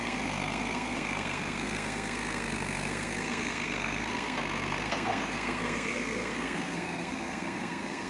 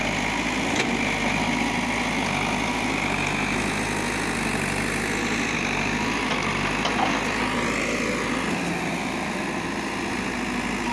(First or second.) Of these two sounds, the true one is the second